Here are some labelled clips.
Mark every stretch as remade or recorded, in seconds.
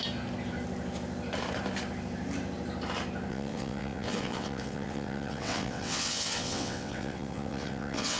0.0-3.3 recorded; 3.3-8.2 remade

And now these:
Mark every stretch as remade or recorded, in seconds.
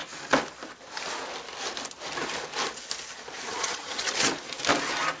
0.0-3.5 recorded; 3.5-4.3 remade; 4.3-5.2 recorded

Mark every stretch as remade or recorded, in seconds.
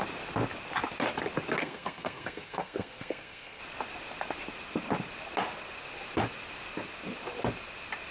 0.0-1.6 recorded; 1.6-3.6 remade; 3.6-8.1 recorded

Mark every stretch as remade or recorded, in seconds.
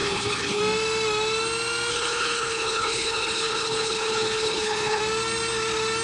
0.0-0.6 remade; 0.6-1.9 recorded; 1.9-5.0 remade; 5.0-6.0 recorded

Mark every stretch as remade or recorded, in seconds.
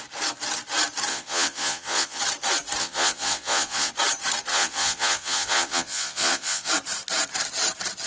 0.0-1.1 recorded; 1.1-2.2 remade; 2.2-2.8 recorded; 2.8-3.9 remade; 3.9-4.5 recorded; 4.5-6.7 remade; 6.7-8.1 recorded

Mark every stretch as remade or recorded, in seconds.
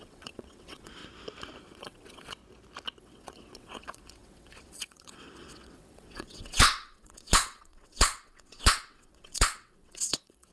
0.0-1.0 remade; 1.0-1.6 recorded; 1.6-2.4 remade; 2.4-3.0 recorded; 3.0-10.5 remade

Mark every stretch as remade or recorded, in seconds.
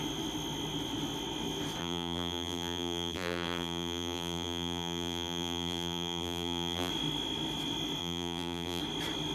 0.0-1.8 recorded; 1.8-6.9 remade; 6.9-8.0 recorded; 8.0-8.8 remade; 8.8-9.3 recorded